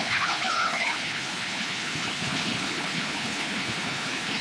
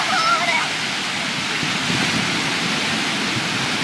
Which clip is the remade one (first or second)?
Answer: first